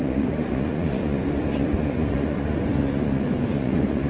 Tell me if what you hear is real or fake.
fake